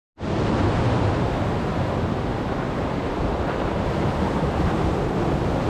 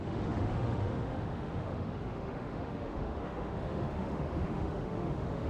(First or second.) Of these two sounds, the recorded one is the first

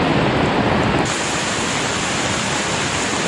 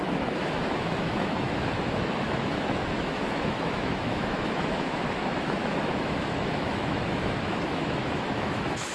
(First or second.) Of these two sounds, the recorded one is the first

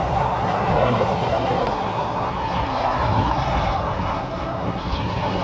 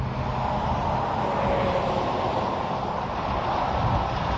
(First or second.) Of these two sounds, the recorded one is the second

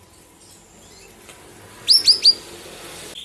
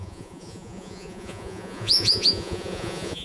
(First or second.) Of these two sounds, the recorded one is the first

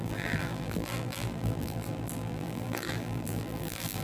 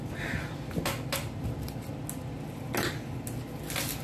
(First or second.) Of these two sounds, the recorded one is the second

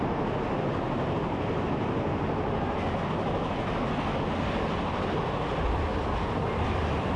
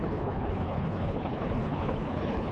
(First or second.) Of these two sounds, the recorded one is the first